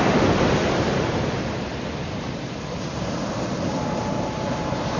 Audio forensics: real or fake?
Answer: fake